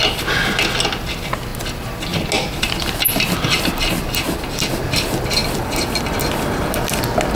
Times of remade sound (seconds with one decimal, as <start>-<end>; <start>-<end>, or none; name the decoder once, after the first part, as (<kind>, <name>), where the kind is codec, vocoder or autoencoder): none

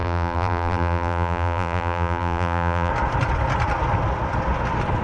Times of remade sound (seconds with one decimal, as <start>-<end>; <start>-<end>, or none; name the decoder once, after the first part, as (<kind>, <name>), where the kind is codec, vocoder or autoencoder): 0.0-2.9 (vocoder, BigVGAN v2)